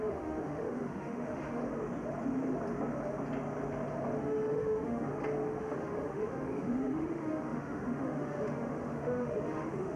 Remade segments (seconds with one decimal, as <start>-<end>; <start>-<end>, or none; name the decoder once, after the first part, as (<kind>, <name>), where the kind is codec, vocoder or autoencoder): 0.0-1.6 (autoencoder, DAC-VAE); 4.2-5.1; 5.6-10.0